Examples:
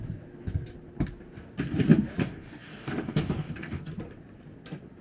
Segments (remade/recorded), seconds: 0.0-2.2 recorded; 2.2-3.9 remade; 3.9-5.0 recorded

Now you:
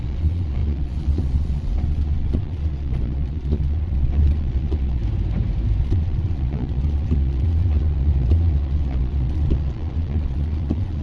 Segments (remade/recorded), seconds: 0.0-5.0 remade; 5.0-5.8 recorded; 5.8-11.0 remade

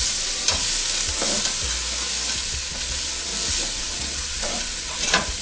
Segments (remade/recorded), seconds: 0.0-0.4 remade; 0.4-2.4 recorded; 2.4-3.3 remade; 3.3-3.8 recorded; 3.8-5.4 remade

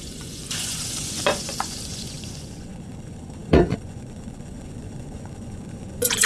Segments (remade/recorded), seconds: 0.0-6.3 remade

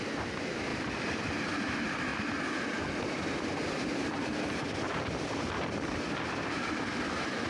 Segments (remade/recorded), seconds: 0.0-0.7 recorded; 0.7-1.3 remade; 1.3-2.1 recorded; 2.1-6.6 remade; 6.6-7.5 recorded

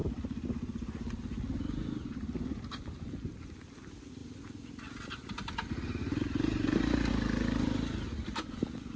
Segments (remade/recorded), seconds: 0.0-6.0 recorded; 6.0-7.1 remade; 7.1-9.0 recorded